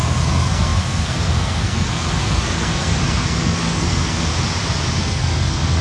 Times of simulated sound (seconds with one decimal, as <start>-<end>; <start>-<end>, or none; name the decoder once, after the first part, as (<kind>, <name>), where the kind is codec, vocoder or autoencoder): 0.0-4.3 (codec, SNAC); 5.0-5.8